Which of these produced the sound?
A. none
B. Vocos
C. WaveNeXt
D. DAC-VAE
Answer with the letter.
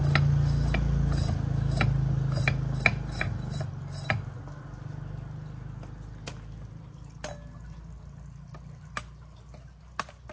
A